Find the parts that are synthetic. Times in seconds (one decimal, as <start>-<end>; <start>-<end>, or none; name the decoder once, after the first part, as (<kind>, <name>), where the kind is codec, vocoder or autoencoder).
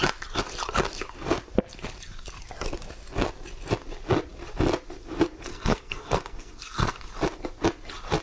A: 5.5-7.1 (codec, SNAC)